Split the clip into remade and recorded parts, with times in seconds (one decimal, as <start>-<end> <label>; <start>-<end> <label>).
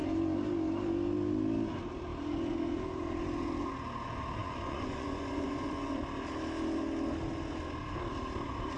0.0-4.4 recorded; 4.4-5.9 remade; 5.9-8.8 recorded